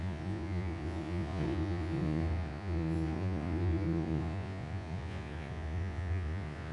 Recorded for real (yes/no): no